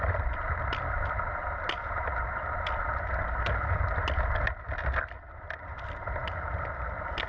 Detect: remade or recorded recorded